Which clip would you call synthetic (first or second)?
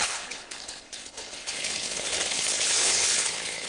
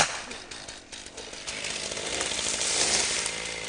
first